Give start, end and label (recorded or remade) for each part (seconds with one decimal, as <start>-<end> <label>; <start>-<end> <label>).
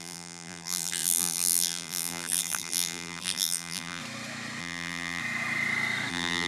0.0-4.0 remade; 4.0-4.6 recorded; 4.6-5.2 remade; 5.2-6.1 recorded; 6.1-6.5 remade